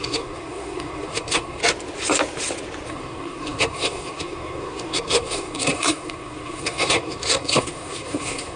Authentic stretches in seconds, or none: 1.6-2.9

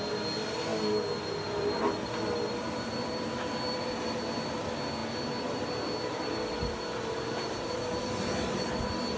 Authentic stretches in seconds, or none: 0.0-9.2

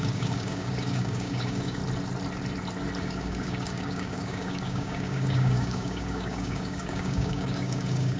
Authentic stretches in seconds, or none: 1.8-3.0

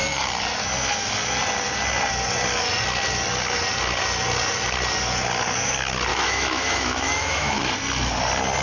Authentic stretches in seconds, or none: 0.0-6.1; 7.6-8.6

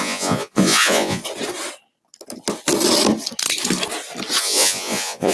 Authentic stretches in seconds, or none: 1.2-4.4